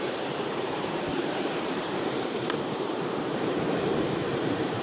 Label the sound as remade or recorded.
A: remade